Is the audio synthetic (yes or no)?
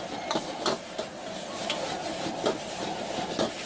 no